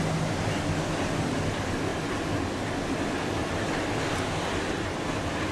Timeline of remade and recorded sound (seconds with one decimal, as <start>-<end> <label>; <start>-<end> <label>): 0.0-5.5 recorded